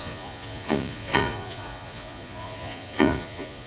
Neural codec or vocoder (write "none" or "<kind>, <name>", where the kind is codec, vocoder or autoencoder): vocoder, Vocos